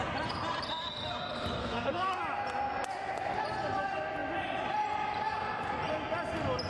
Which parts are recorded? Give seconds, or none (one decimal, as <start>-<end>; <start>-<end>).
0.0-1.6; 2.2-6.7